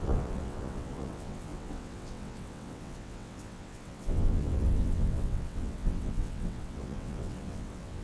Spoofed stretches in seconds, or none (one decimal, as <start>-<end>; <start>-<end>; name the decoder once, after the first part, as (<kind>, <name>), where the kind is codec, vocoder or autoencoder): 0.0-8.0 (vocoder, WaveNeXt)